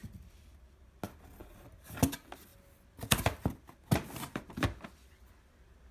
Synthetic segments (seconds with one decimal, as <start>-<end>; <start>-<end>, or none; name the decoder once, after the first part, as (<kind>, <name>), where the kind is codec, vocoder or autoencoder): 1.4-2.0 (vocoder, BigVGAN v2)